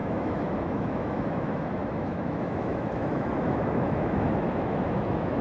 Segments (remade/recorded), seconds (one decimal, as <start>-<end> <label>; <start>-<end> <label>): 0.0-5.4 remade